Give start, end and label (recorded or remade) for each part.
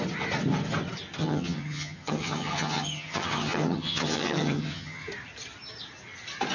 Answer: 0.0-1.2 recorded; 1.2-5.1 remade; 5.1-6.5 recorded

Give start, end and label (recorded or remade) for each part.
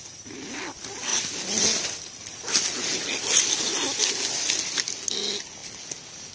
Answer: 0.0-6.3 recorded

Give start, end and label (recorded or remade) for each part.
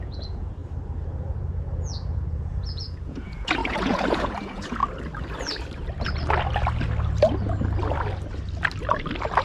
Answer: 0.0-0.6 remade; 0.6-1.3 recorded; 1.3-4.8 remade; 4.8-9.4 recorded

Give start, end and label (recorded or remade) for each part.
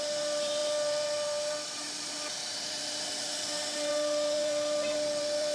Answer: 0.0-5.5 remade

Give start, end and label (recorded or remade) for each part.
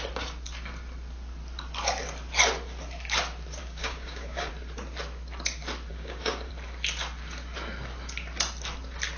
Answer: 0.0-3.6 recorded; 3.6-4.5 remade; 4.5-5.9 recorded; 5.9-6.5 remade; 6.5-9.2 recorded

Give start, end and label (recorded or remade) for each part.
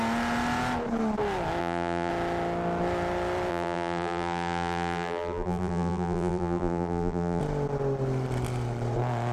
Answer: 0.0-1.6 recorded; 1.6-2.1 remade; 2.1-3.5 recorded; 3.5-7.4 remade; 7.4-9.3 recorded